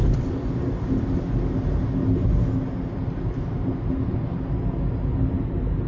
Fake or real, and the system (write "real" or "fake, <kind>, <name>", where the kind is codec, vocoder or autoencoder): real